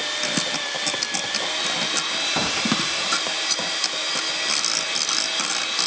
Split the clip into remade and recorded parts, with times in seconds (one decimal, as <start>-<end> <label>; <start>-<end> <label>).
0.0-2.4 recorded; 2.4-3.8 remade; 3.8-5.9 recorded